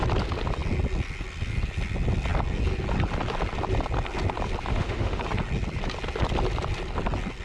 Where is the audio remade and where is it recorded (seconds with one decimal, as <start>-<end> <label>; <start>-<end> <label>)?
0.0-4.7 recorded; 4.7-5.2 remade; 5.2-7.4 recorded